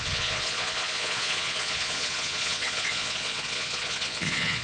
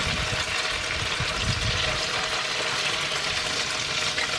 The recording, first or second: second